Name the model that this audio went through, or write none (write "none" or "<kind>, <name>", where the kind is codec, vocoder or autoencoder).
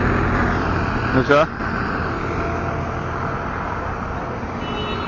none